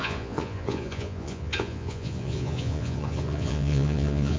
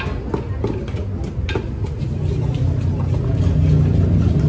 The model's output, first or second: first